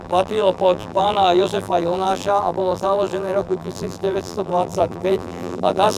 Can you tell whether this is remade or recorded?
remade